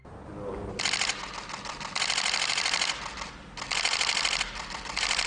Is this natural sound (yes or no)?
yes